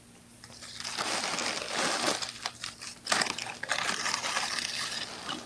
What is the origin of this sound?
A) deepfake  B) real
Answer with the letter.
B